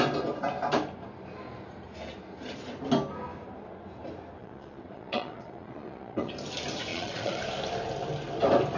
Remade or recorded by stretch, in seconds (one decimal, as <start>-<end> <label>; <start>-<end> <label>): 0.0-4.4 recorded; 4.4-6.3 remade; 6.3-6.9 recorded; 6.9-7.4 remade; 7.4-8.8 recorded